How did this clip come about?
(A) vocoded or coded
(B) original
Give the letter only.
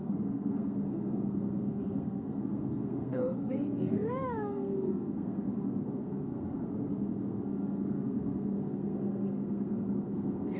A